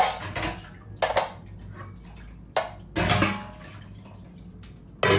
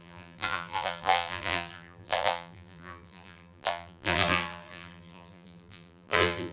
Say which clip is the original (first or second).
first